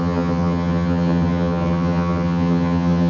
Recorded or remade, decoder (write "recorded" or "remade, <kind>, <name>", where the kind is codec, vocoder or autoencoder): remade, vocoder, HiFi-GAN